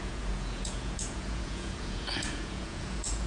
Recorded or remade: remade